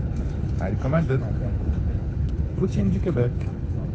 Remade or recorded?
remade